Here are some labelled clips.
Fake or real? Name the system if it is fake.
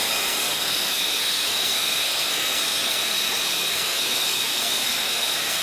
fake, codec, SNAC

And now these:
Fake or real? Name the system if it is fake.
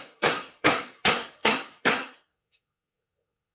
fake, codec, SNAC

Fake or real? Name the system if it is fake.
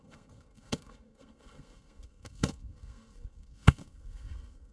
fake, codec, SNAC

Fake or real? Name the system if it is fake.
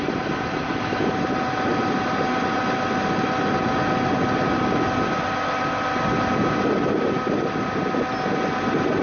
real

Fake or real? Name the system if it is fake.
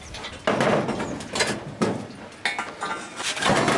real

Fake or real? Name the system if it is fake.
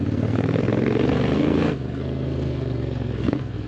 fake, codec, SNAC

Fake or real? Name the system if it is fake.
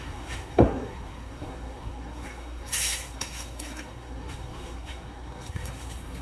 fake, codec, SNAC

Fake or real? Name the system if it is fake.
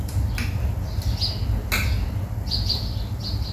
real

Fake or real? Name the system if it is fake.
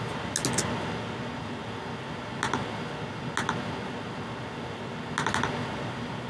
real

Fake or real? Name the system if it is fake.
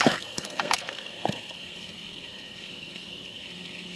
fake, codec, SNAC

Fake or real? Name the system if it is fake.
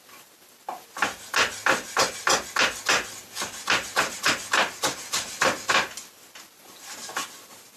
real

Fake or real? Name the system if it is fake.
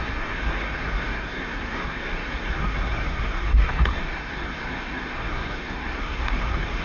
fake, codec, SNAC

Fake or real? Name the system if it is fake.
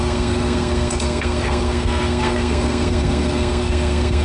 fake, codec, SNAC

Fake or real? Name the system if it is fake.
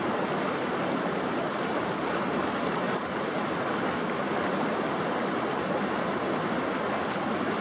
real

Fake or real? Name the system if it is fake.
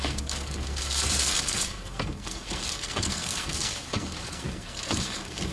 fake, codec, SNAC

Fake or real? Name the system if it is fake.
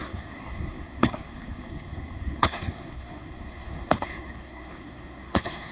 fake, codec, SNAC